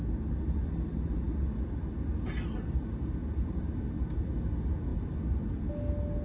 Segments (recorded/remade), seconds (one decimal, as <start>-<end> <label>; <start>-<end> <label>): 0.0-6.2 recorded